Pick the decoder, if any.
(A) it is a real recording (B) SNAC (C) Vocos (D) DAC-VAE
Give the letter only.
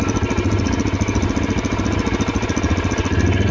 A